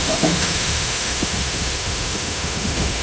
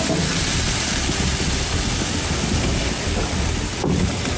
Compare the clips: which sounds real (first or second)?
second